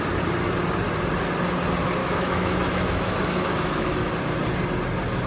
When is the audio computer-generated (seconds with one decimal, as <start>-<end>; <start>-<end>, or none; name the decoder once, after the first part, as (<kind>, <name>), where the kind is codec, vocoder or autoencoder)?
2.0-4.1 (autoencoder, DAC-VAE)